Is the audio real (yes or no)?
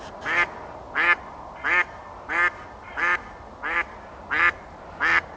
yes